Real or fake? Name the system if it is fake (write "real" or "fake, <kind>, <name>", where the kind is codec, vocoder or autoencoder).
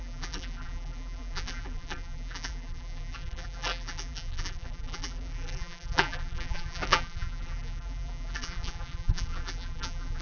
fake, vocoder, BigVGAN v2